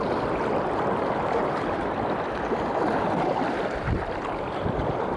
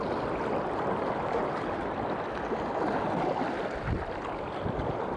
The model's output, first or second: first